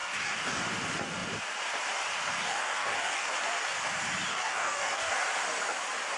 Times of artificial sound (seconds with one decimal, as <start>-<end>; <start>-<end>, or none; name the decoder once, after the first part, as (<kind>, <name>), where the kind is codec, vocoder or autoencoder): 0.0-0.6 (codec, DAC); 2.4-3.3; 4.3-5.1